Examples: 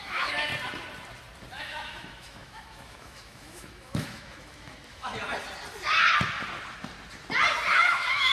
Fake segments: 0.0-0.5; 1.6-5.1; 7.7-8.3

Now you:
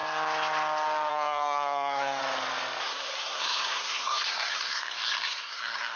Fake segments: 1.1-2.2; 2.8-6.0

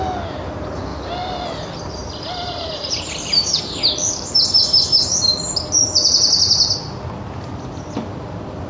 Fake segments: 0.9-3.6

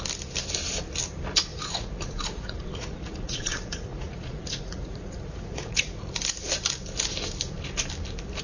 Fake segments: 1.5-6.1

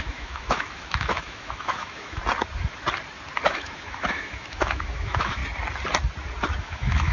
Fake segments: 0.0-2.2; 3.5-5.4; 6.6-7.1

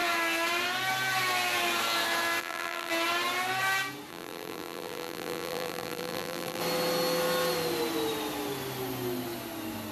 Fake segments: 2.4-2.9; 4.1-6.6

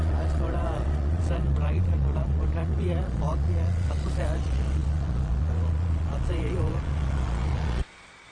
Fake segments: 0.0-8.3

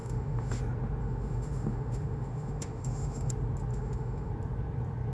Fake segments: 0.0-0.6; 1.0-3.3; 3.7-4.3